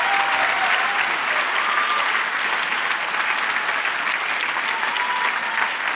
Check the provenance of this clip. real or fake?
real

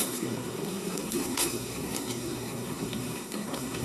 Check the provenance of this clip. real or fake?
fake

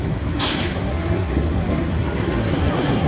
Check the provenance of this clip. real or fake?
fake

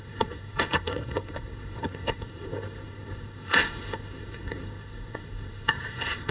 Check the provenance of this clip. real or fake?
fake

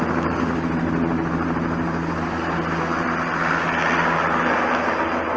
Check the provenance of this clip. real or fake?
real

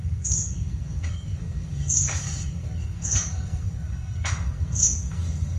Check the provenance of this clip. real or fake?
fake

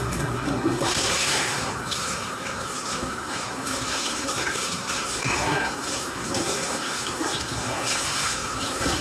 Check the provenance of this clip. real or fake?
fake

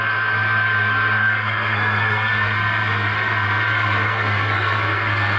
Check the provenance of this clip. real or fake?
fake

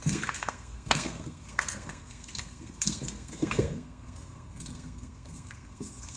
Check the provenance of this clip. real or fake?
fake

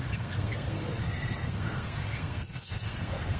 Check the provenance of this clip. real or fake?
fake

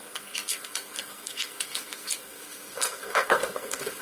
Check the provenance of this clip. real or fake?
fake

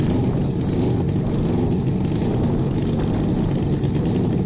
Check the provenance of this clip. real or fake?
real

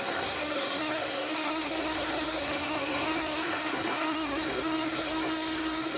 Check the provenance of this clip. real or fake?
fake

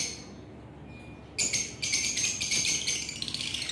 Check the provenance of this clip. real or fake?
real